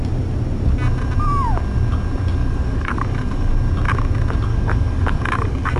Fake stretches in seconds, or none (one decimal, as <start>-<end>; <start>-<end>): 2.4-3.5; 4.5-5.8